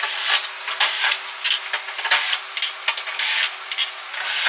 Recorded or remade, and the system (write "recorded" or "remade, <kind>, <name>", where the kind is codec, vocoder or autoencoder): recorded